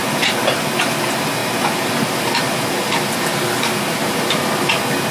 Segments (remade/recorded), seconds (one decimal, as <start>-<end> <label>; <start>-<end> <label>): 0.0-1.4 recorded; 1.4-4.5 remade; 4.5-5.1 recorded